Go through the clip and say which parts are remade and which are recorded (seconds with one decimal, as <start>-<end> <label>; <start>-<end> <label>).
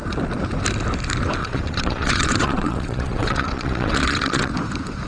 0.0-1.4 recorded; 1.4-4.5 remade; 4.5-5.1 recorded